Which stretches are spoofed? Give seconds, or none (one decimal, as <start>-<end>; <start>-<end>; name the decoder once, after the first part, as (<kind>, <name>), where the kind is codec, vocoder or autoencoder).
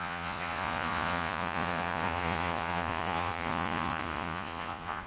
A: 0.0-5.1 (vocoder, Vocos)